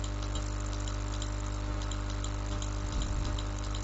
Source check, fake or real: real